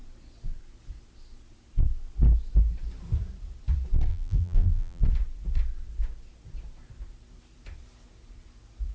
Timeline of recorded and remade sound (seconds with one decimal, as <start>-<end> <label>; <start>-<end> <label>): 0.0-4.1 recorded; 4.1-5.0 remade; 5.0-8.9 recorded